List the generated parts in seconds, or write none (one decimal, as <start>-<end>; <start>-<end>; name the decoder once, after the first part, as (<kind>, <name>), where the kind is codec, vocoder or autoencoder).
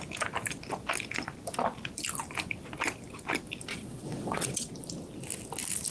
3.7-4.7 (vocoder, WaveNeXt)